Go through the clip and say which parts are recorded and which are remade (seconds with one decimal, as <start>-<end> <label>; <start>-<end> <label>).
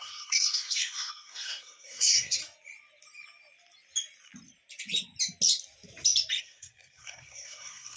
0.0-2.4 remade; 2.4-6.4 recorded; 6.4-8.0 remade